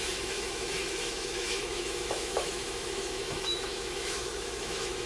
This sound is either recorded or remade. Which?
remade